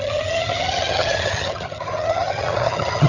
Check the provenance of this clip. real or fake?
fake